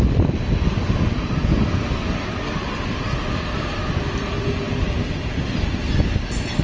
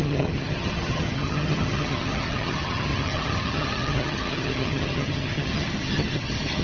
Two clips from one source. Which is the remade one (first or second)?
second